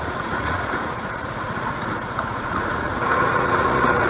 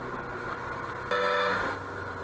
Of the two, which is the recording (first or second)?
second